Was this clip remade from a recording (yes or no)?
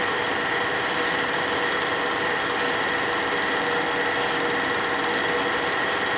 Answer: no